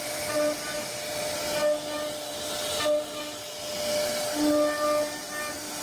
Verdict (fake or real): real